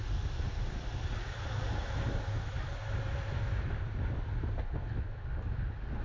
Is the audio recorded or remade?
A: recorded